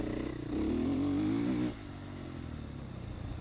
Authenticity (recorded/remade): recorded